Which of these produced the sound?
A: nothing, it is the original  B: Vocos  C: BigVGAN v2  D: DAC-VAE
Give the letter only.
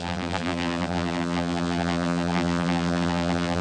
C